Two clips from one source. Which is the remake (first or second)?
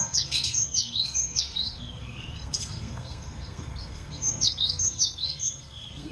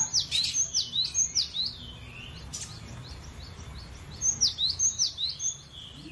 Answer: first